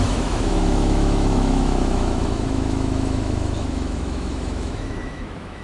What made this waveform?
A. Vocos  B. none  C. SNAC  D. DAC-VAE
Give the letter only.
D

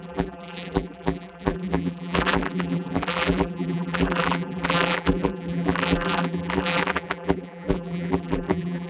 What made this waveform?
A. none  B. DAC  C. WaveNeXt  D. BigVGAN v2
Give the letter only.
D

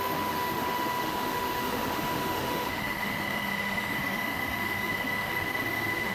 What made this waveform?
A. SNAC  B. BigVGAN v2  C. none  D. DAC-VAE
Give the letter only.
D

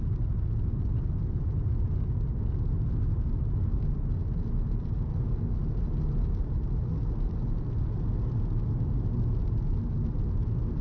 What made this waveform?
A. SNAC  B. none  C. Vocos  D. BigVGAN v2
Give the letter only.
B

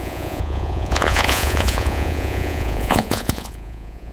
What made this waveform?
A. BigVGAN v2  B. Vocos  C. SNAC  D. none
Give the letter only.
B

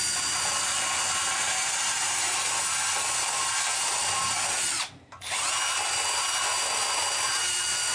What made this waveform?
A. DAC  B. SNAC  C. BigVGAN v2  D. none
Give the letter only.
D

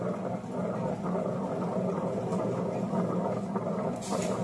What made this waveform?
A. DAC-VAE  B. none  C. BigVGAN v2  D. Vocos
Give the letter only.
B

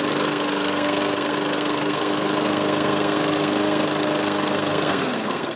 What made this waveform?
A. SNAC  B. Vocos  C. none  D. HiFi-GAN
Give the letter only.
A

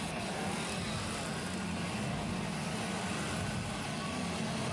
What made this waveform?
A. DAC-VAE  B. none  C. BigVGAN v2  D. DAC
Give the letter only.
B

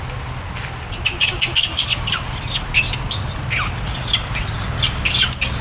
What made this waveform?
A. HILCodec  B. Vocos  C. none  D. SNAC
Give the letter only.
C